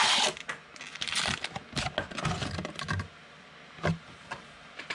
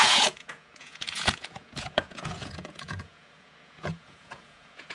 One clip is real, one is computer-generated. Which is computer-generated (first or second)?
second